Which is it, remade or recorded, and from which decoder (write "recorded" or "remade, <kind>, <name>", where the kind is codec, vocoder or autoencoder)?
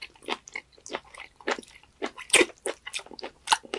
recorded